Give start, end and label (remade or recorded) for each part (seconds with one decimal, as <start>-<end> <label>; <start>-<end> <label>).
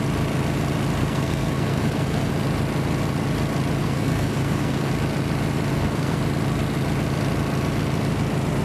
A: 0.0-1.0 recorded; 1.0-2.3 remade; 2.3-3.8 recorded; 3.8-4.9 remade; 4.9-5.7 recorded; 5.7-6.2 remade; 6.2-8.6 recorded